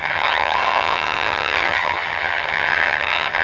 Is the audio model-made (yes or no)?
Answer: yes